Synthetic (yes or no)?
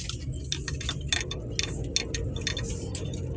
no